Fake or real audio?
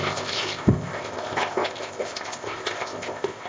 fake